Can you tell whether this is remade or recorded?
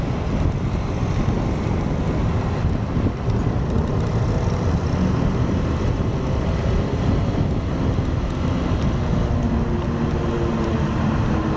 recorded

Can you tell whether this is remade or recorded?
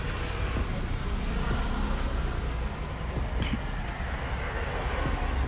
recorded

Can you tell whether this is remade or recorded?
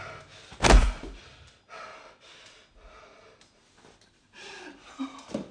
recorded